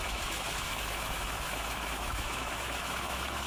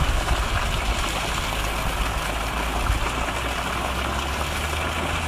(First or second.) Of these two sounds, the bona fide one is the second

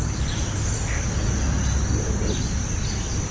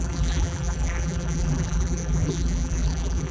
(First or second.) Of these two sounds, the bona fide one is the first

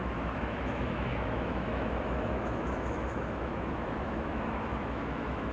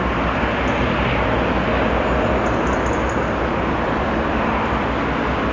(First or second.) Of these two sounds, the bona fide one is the second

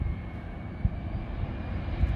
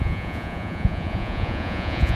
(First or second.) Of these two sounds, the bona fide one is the first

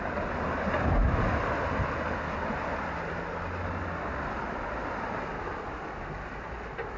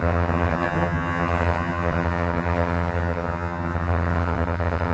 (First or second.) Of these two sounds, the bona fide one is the first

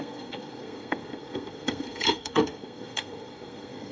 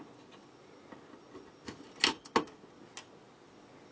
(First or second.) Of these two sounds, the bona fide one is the second